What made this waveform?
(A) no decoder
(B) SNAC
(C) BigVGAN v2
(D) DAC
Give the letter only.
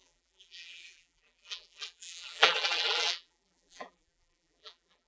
C